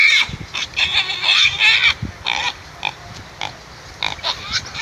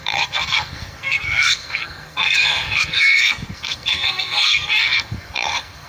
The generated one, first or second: second